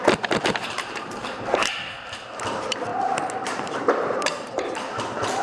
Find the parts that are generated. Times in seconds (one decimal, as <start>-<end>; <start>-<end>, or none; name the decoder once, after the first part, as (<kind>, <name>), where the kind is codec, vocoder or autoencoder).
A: 0.0-5.4 (vocoder, BigVGAN v2)